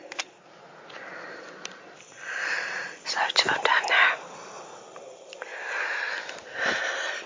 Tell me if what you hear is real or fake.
real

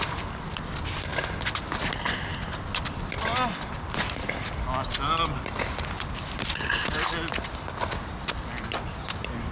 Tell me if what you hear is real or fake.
real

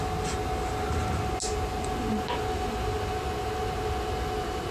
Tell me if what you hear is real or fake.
real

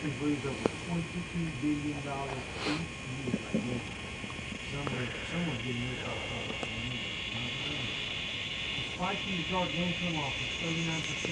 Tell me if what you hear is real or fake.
real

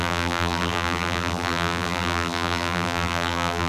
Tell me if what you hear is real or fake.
fake